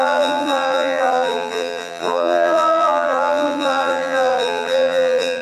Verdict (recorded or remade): remade